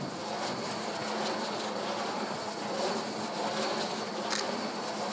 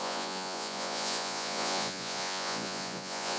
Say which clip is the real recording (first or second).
first